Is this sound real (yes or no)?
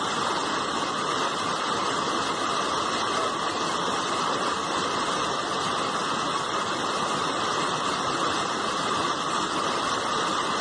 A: yes